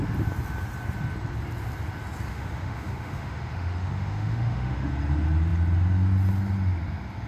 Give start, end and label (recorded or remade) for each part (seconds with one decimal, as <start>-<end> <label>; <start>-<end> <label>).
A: 0.0-2.3 recorded; 2.3-4.9 remade; 4.9-7.3 recorded